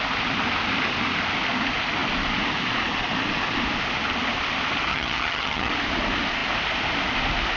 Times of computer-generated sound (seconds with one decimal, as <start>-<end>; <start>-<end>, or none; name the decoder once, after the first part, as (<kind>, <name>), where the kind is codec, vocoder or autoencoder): 4.9-5.7 (vocoder, HiFi-GAN)